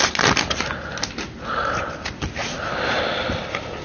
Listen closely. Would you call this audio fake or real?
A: real